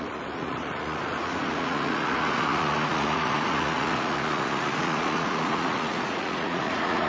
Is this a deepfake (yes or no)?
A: yes